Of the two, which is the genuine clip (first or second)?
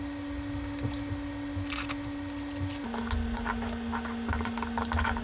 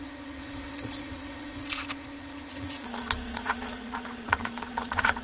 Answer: first